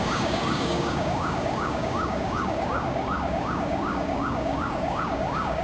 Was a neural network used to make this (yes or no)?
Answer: yes